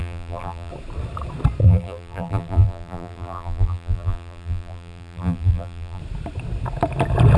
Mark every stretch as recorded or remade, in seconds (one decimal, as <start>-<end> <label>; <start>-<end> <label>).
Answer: 0.0-0.7 remade; 0.7-1.6 recorded; 1.6-6.0 remade; 6.0-7.4 recorded